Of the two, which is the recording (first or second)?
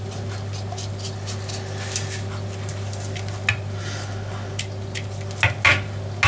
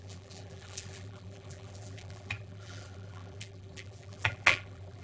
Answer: first